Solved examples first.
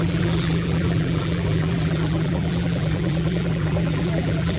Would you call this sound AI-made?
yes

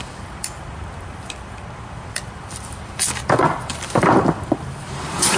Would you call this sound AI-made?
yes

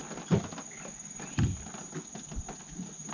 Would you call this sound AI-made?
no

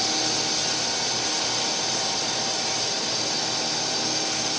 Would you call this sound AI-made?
no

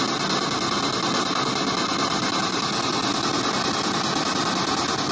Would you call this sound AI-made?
no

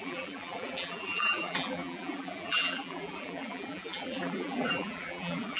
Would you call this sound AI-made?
yes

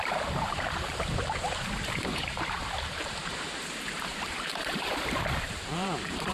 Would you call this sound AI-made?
yes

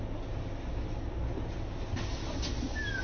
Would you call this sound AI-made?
no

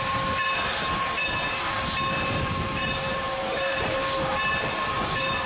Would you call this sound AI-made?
yes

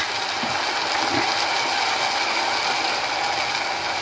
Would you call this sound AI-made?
no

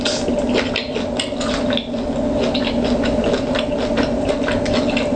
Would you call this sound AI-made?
no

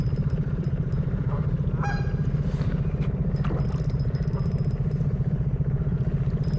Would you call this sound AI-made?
no